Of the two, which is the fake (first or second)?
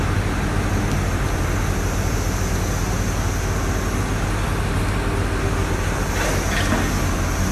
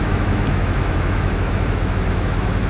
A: second